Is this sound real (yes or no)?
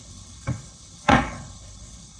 no